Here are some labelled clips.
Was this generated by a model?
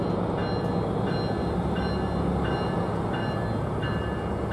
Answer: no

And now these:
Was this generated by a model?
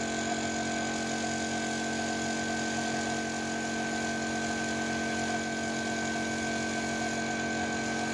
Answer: no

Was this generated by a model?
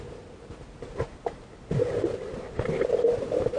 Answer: no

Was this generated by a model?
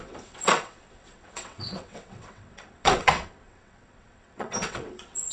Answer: yes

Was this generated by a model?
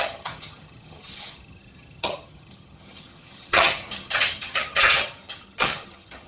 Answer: yes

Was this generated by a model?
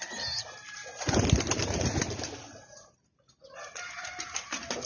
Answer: no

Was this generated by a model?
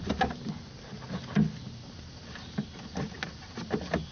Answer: no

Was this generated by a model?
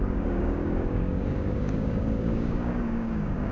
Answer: yes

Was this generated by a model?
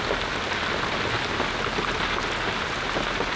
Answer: no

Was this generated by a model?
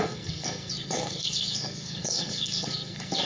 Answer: yes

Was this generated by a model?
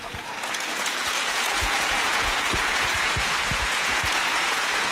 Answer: yes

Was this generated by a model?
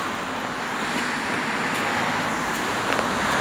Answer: no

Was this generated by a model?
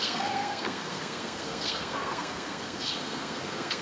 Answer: yes